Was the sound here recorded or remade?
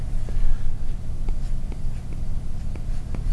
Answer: recorded